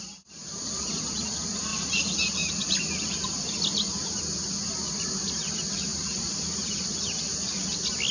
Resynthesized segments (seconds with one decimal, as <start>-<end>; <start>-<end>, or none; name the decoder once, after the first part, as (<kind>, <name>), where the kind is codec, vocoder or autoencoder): 1.7-4.2 (vocoder, BigVGAN v2); 5.9-6.5